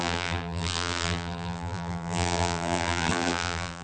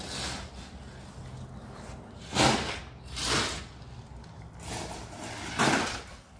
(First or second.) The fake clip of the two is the first